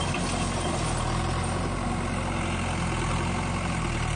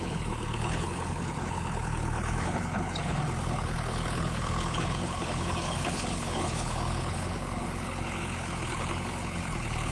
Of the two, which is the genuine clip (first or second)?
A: first